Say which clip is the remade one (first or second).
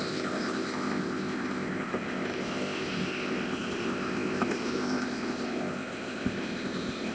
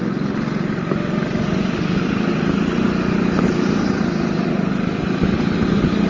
first